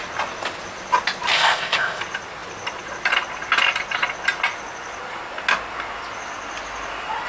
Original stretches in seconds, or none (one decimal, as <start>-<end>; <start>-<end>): 0.0-1.3; 2.0-7.3